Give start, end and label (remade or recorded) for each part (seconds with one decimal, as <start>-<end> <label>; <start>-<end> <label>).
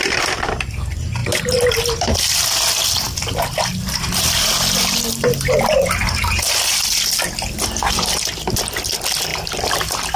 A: 0.0-1.2 recorded; 1.2-1.7 remade; 1.7-3.7 recorded; 3.7-6.9 remade; 6.9-9.3 recorded; 9.3-10.2 remade